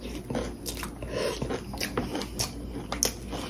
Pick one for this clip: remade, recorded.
recorded